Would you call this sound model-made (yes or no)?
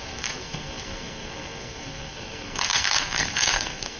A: yes